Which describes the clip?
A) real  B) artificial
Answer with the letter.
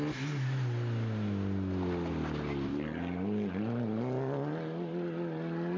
A